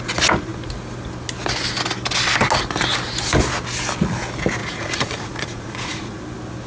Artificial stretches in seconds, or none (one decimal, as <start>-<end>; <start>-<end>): 4.6-6.2